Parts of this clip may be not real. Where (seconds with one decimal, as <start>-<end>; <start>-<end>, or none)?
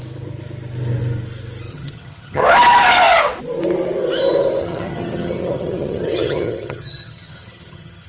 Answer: 1.7-2.4; 4.6-8.1